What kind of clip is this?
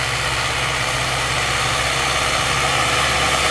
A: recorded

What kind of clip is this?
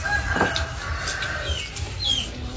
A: recorded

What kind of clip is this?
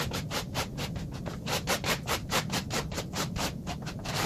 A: recorded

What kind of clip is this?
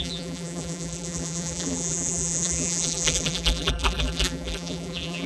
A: remade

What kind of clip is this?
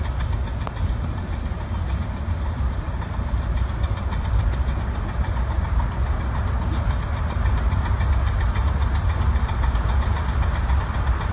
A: recorded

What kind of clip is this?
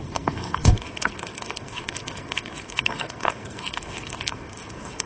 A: remade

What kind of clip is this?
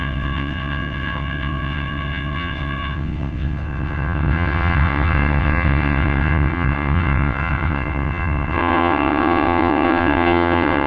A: remade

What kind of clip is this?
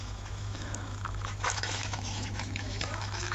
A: remade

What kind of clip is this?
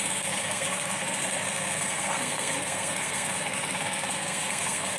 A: remade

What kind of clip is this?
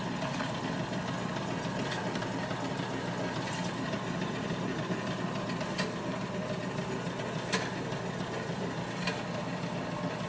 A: recorded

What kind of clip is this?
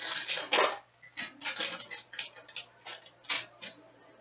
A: recorded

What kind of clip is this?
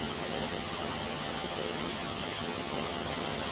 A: remade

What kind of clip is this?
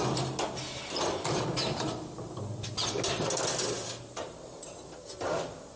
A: recorded